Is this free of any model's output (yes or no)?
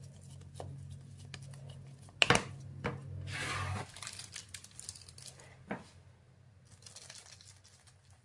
yes